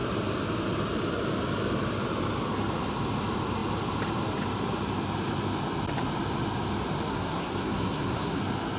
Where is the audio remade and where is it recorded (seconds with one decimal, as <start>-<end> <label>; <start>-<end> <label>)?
0.0-7.1 recorded; 7.1-8.4 remade; 8.4-8.8 recorded